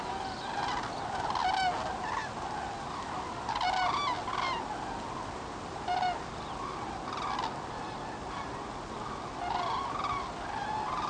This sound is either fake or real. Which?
real